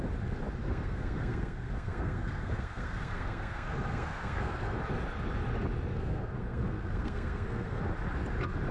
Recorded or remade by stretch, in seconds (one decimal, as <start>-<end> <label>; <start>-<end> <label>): 0.0-0.6 recorded; 0.6-4.8 remade; 4.8-5.9 recorded; 5.9-7.8 remade; 7.8-8.7 recorded